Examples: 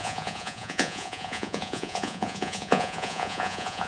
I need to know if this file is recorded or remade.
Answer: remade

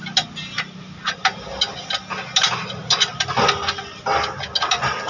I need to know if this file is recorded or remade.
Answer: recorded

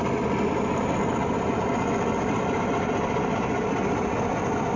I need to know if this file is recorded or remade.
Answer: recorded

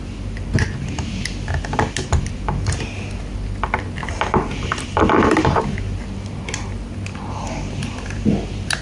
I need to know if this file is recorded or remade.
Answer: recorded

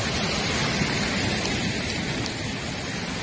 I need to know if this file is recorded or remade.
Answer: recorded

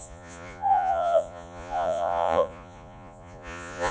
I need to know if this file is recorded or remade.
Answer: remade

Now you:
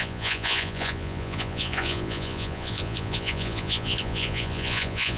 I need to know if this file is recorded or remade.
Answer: remade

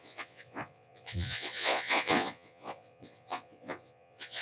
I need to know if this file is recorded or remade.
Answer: remade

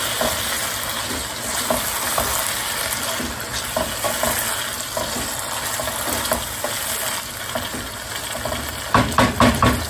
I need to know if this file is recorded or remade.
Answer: recorded